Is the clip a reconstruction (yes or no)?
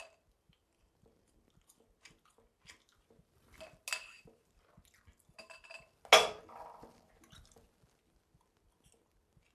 no